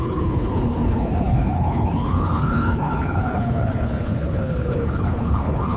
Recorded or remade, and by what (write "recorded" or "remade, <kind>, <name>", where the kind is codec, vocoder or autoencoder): remade, codec, HILCodec